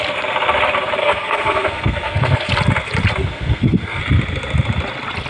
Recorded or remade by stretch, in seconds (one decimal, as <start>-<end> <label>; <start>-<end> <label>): 0.0-1.0 recorded; 1.0-2.5 remade; 2.5-3.2 recorded; 3.2-4.0 remade; 4.0-5.3 recorded